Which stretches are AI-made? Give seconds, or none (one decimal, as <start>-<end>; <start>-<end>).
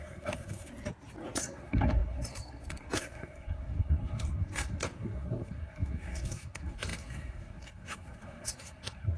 0.0-0.7; 1.4-9.2